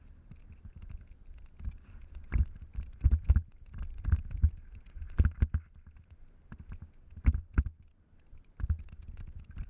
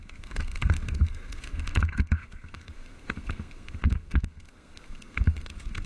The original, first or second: first